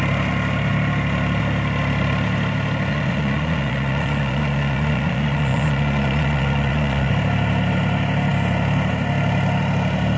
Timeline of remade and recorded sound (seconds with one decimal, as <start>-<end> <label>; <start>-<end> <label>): 0.0-2.9 recorded; 2.9-7.1 remade; 7.1-10.2 recorded